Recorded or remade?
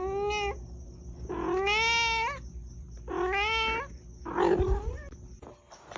recorded